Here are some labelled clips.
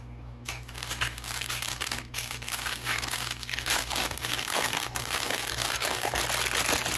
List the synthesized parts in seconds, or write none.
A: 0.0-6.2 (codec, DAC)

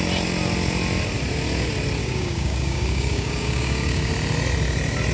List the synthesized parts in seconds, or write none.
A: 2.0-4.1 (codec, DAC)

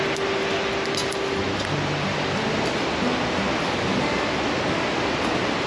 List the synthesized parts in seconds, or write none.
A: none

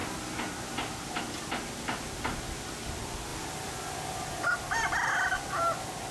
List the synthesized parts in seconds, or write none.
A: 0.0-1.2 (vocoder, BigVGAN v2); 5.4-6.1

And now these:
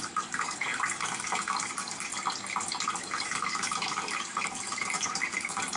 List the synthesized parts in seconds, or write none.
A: 0.0-2.1 (codec, DAC); 2.9-5.8